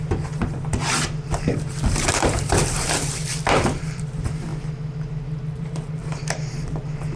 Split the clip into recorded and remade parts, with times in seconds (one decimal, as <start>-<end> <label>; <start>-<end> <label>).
0.0-0.6 remade; 0.6-2.0 recorded; 2.0-4.5 remade; 4.5-5.6 recorded; 5.6-7.2 remade